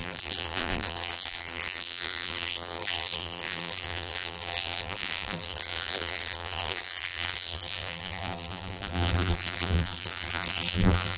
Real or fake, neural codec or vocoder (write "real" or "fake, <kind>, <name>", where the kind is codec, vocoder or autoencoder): fake, vocoder, BigVGAN v2